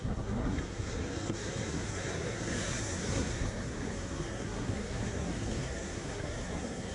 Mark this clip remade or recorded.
remade